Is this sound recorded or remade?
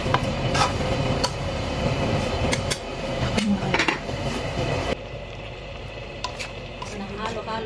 remade